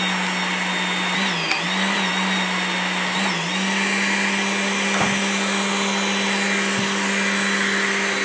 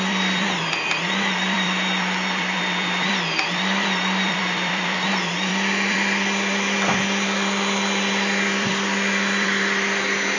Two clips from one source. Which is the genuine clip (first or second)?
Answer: first